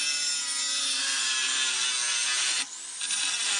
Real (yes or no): yes